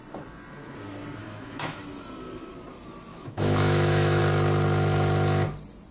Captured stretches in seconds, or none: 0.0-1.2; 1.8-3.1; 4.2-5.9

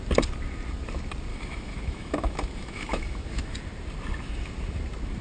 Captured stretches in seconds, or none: 0.0-1.3; 3.6-5.2

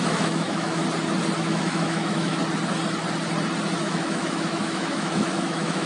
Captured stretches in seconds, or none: 0.8-1.4; 2.4-3.8

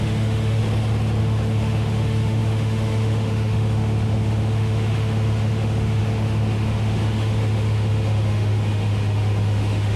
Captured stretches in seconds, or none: 0.6-1.2

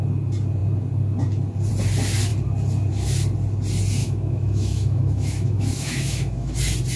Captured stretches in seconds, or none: 0.0-4.0; 6.5-7.0

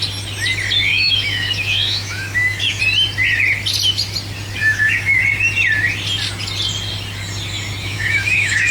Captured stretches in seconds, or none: 0.0-0.9; 2.8-4.6; 5.2-7.8

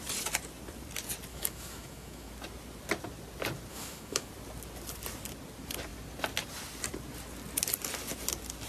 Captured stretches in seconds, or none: 0.0-1.3; 2.3-3.7; 4.3-8.7

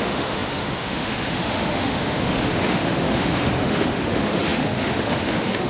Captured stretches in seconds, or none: none